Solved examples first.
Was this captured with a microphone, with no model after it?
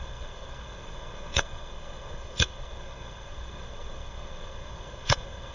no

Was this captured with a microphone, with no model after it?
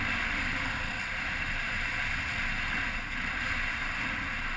yes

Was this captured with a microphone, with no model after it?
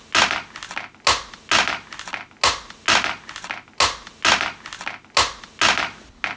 yes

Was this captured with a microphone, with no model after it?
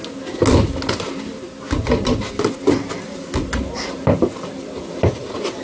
yes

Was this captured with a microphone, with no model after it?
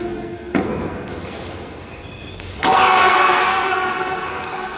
no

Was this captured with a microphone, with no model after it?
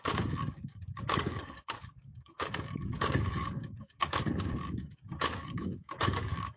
no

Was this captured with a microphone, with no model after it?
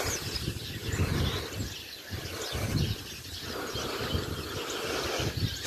yes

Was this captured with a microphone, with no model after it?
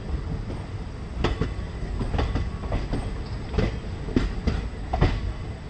yes